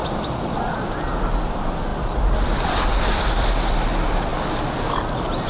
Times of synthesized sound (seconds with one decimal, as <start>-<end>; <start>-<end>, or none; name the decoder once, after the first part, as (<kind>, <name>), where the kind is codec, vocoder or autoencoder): 1.3-4.3 (vocoder, BigVGAN v2)